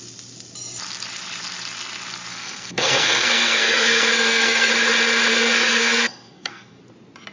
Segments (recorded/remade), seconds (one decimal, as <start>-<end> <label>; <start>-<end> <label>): 0.0-2.3 recorded; 2.3-4.7 remade; 4.7-5.3 recorded; 5.3-6.8 remade; 6.8-7.3 recorded